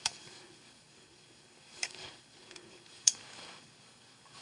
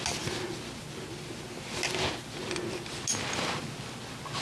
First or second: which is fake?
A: first